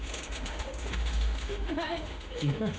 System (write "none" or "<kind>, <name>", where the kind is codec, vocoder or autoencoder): autoencoder, DAC-VAE